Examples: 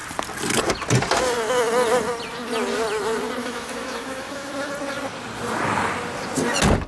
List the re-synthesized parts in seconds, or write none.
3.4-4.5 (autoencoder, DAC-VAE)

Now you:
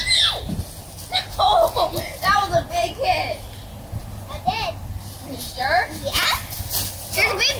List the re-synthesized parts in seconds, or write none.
none

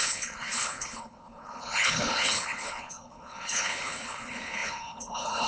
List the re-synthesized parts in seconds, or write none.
0.0-5.5 (codec, HILCodec)

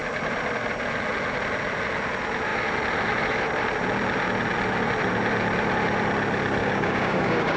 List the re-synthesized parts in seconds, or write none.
6.6-7.6 (codec, DAC)

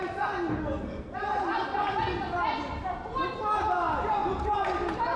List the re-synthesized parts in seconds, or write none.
0.6-1.1 (codec, SNAC)